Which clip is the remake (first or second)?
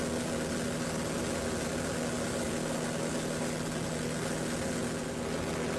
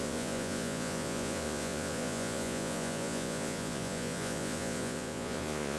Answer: second